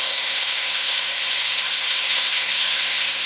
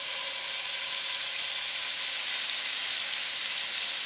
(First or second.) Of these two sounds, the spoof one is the first